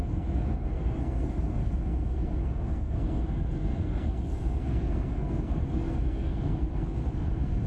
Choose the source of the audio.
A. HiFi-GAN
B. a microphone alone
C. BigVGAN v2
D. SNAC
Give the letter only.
D